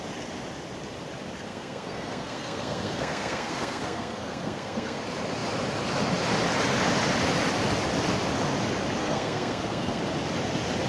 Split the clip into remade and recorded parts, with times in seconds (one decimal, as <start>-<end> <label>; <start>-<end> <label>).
0.0-1.5 recorded; 1.5-5.0 remade; 5.0-9.0 recorded; 9.0-10.0 remade; 10.0-10.9 recorded